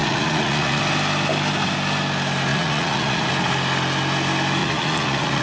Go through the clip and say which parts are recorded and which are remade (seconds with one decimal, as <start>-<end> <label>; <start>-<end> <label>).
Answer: 0.0-0.8 remade; 0.8-2.5 recorded; 2.5-3.3 remade; 3.3-4.6 recorded; 4.6-5.4 remade